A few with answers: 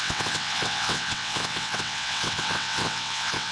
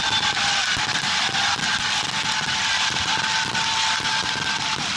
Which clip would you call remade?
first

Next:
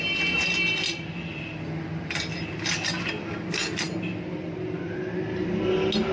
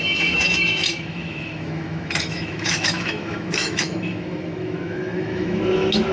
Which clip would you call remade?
second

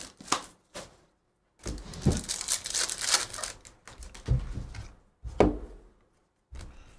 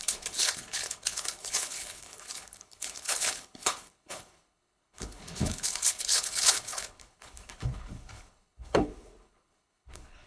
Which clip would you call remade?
second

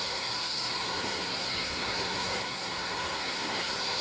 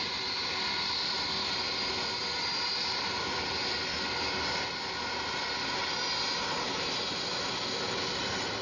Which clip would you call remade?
first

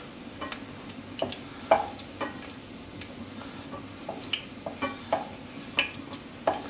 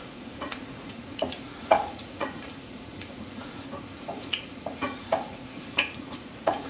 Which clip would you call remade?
second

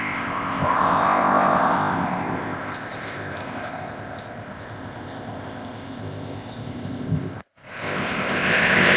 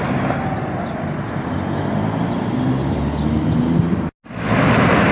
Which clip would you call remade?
first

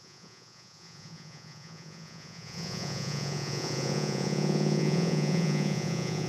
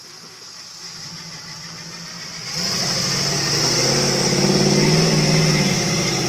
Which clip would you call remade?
first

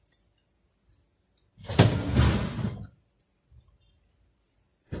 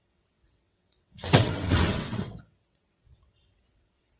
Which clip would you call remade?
second